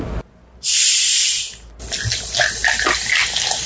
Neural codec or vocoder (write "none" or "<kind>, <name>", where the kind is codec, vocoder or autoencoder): none